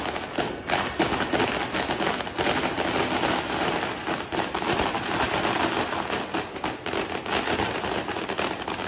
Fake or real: real